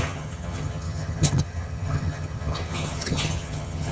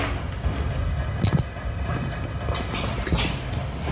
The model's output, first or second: first